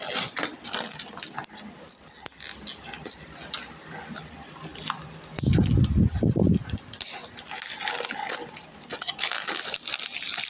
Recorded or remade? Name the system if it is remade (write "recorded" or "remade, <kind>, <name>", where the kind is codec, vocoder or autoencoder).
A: recorded